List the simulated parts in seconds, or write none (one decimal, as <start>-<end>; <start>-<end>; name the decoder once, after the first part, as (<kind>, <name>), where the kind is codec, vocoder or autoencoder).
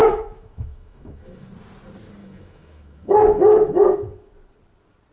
0.0-1.5 (autoencoder, DAC-VAE); 2.2-4.3